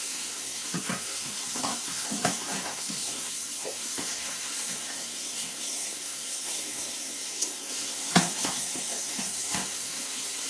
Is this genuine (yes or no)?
no